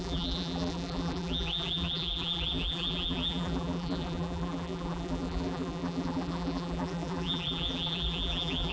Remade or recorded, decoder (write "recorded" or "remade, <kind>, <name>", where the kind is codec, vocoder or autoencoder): remade, vocoder, BigVGAN v2